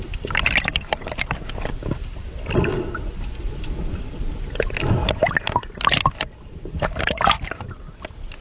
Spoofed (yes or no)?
no